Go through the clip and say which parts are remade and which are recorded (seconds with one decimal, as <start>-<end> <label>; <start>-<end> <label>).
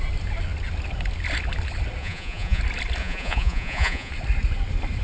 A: 0.0-2.0 recorded; 2.0-2.6 remade; 2.6-3.0 recorded; 3.0-4.1 remade; 4.1-5.0 recorded